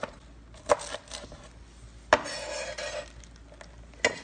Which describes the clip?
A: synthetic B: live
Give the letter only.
B